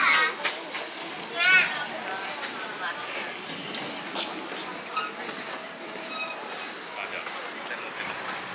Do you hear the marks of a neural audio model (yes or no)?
no